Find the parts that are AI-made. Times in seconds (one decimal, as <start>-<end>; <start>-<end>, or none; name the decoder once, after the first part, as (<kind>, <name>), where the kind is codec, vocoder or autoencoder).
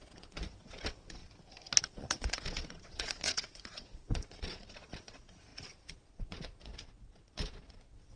0.0-1.2 (vocoder, Vocos); 1.8-8.2